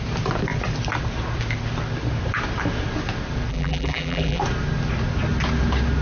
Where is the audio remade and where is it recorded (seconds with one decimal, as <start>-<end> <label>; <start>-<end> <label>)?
0.0-3.5 recorded; 3.5-4.4 remade; 4.4-6.0 recorded